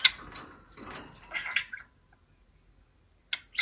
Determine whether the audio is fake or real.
real